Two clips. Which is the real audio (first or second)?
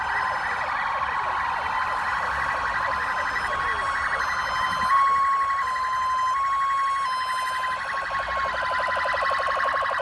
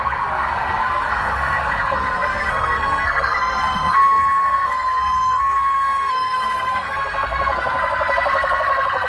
first